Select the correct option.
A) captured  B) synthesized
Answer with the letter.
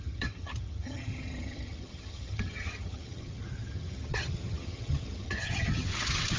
B